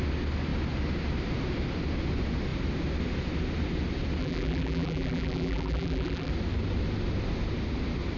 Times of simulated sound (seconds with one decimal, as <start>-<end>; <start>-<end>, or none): 4.2-6.3

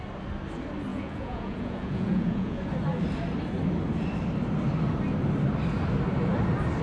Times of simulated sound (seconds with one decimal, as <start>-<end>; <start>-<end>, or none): 0.9-2.6